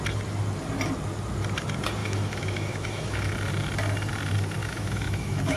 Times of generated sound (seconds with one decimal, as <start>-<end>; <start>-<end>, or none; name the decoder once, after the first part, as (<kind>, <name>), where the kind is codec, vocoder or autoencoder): 2.0-3.3 (autoencoder, DAC-VAE); 4.6-5.6